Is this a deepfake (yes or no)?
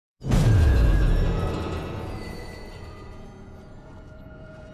yes